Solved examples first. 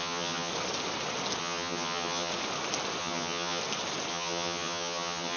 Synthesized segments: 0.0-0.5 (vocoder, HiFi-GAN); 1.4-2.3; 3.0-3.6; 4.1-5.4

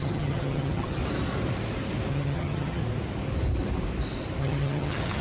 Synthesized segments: 0.0-1.0 (vocoder, HiFi-GAN); 2.1-2.8; 4.4-5.2